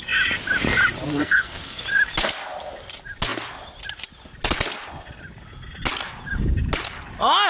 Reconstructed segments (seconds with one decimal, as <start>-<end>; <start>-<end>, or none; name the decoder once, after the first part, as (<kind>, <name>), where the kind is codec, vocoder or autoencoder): 1.2-1.8 (codec, SNAC)

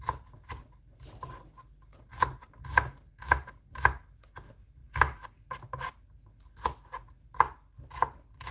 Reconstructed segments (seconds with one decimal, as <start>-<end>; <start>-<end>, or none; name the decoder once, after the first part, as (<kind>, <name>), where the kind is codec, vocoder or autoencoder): 4.8-5.3 (vocoder, BigVGAN v2)

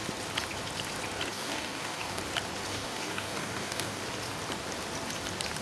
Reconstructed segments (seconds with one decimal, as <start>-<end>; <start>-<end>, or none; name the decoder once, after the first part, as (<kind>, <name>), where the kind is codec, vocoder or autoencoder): 1.3-2.2 (codec, DAC); 2.7-4.0

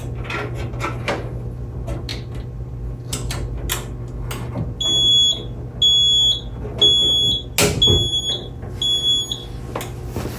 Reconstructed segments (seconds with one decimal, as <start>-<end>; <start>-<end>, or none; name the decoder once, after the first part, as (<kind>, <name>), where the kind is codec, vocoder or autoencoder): none

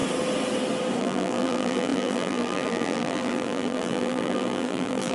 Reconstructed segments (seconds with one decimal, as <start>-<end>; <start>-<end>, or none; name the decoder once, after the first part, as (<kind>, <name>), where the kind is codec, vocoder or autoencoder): 1.0-5.1 (vocoder, BigVGAN v2)

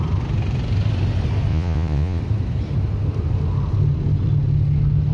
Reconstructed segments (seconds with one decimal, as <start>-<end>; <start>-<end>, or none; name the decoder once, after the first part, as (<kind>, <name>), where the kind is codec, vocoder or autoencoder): 1.5-2.2 (vocoder, Vocos)

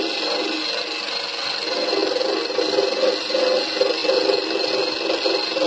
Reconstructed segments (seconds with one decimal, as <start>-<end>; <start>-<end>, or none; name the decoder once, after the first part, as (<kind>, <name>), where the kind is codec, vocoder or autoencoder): none

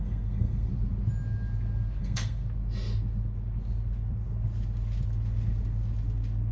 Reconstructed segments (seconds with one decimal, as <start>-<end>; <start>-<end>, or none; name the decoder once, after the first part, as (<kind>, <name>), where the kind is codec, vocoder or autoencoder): 0.0-0.7 (codec, SNAC); 2.0-2.4